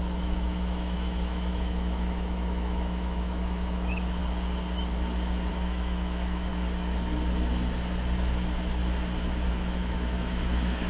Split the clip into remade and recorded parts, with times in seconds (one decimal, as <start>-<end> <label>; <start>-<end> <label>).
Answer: 0.0-4.2 remade; 4.2-5.5 recorded; 5.5-6.5 remade; 6.5-9.5 recorded; 9.5-10.9 remade